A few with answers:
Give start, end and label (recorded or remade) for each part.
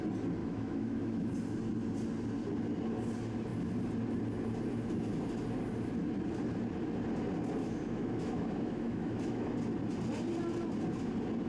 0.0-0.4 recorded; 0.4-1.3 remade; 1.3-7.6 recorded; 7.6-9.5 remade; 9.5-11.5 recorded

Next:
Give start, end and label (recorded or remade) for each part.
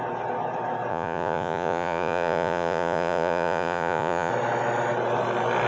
0.0-0.9 recorded; 0.9-4.3 remade; 4.3-5.7 recorded